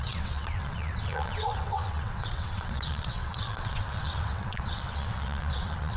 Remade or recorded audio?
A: remade